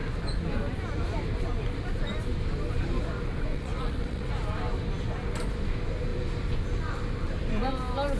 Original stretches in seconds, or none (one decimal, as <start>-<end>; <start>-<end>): 0.0-3.5; 4.3-8.2